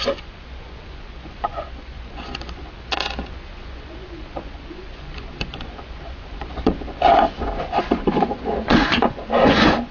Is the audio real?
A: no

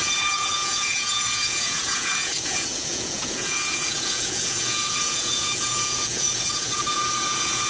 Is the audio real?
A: no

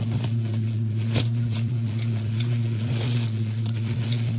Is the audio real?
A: no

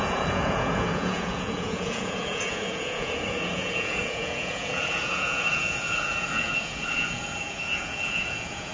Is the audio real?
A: no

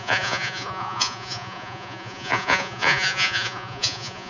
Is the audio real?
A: no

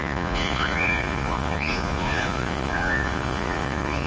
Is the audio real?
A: no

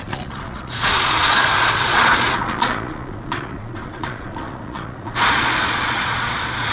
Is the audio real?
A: no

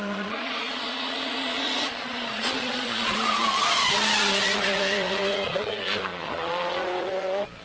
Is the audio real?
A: no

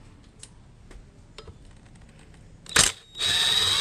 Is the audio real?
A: yes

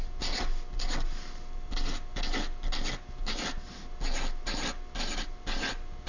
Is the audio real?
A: yes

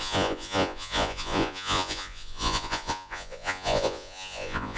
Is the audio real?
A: no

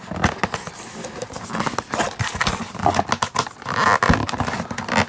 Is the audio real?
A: yes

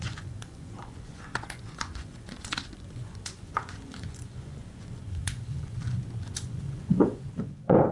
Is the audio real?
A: no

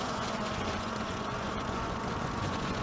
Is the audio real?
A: no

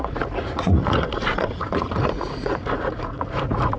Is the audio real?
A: no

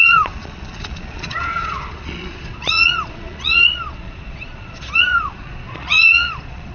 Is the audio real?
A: no